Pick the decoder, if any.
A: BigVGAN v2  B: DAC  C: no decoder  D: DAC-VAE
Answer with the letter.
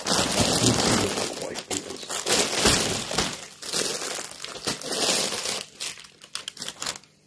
C